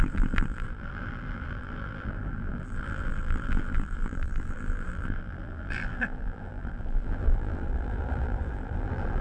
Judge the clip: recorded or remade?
remade